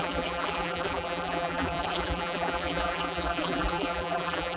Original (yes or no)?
no